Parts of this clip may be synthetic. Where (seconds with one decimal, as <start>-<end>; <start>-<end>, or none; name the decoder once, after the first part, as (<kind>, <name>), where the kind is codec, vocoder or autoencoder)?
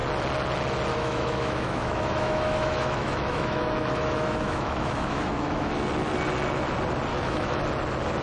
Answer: 0.9-5.7 (autoencoder, DAC-VAE); 7.1-7.6